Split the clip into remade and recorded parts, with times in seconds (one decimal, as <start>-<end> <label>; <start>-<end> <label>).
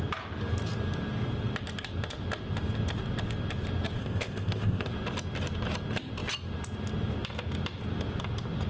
0.0-4.0 recorded; 4.0-4.9 remade; 4.9-8.7 recorded